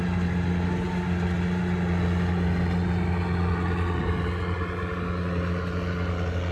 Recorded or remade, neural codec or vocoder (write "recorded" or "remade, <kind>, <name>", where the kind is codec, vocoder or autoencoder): recorded